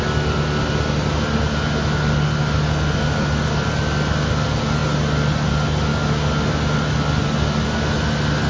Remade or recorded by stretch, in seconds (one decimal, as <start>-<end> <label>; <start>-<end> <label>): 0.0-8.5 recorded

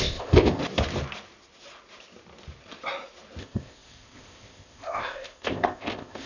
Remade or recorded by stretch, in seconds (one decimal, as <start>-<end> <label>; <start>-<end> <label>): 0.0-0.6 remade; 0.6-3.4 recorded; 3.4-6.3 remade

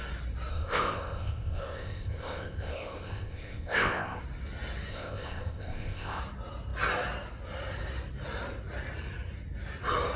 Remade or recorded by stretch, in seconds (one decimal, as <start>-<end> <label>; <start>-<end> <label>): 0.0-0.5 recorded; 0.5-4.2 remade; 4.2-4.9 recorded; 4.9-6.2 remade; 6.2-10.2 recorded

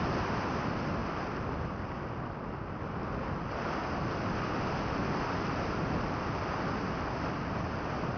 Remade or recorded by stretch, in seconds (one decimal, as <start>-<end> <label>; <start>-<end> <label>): 0.0-8.2 recorded

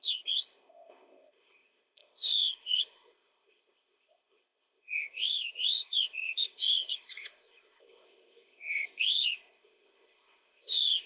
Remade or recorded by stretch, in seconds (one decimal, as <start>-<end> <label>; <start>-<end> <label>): 0.0-11.1 remade